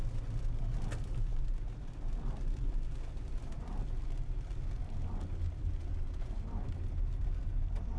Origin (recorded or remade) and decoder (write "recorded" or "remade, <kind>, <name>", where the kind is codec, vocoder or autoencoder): recorded